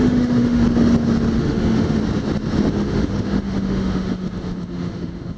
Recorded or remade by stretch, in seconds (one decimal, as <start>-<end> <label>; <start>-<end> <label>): 0.0-0.6 remade; 0.6-1.4 recorded; 1.4-2.0 remade; 2.0-2.7 recorded; 2.7-5.4 remade